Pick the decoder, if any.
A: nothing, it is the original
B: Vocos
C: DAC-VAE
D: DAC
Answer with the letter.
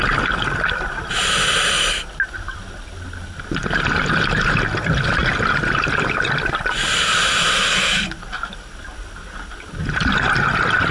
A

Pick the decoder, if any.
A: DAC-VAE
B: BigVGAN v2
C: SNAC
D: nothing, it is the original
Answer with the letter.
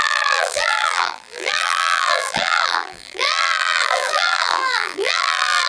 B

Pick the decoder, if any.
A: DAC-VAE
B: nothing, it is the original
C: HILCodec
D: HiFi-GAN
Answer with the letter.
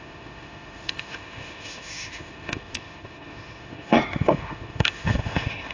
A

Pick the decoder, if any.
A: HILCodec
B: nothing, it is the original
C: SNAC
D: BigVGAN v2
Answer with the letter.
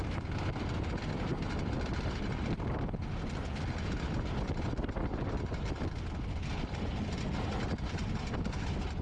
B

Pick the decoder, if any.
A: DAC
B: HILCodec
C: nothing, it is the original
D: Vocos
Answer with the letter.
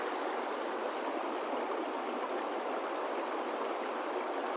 C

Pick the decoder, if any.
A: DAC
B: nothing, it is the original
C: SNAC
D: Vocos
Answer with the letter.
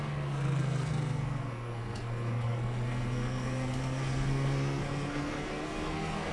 C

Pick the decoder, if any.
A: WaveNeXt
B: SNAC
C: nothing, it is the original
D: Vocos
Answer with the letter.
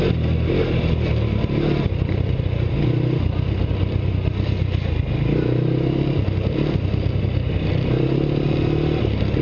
C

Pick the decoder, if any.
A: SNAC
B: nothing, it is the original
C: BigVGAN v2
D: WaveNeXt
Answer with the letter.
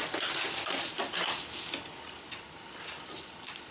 B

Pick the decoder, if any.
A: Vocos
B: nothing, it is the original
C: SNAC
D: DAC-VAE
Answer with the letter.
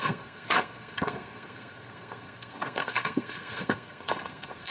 C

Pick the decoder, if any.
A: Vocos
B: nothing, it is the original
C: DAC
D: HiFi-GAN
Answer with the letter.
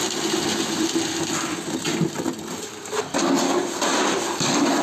B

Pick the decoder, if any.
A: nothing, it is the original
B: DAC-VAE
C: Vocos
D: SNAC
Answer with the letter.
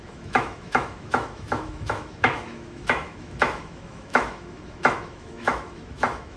B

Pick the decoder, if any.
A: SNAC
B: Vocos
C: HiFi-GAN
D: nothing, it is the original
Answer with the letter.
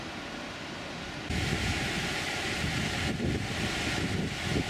D